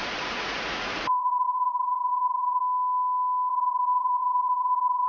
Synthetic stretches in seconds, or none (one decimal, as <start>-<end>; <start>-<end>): 0.0-2.6; 3.5-5.1

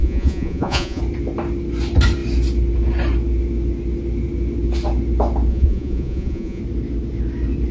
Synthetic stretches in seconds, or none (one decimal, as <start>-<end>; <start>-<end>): 0.0-1.0; 5.5-6.6

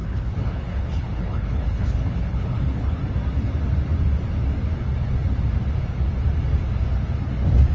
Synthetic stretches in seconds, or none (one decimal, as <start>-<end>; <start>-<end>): 0.0-3.0